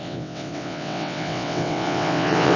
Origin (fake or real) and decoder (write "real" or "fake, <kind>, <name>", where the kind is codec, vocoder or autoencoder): fake, vocoder, WaveNeXt